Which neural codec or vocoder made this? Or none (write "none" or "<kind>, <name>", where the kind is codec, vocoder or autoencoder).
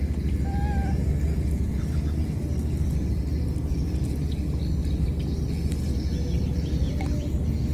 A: none